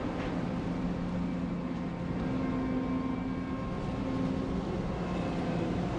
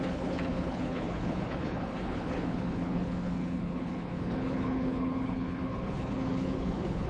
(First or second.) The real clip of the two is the first